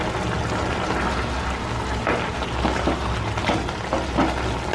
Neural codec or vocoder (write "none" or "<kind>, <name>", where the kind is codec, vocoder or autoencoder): none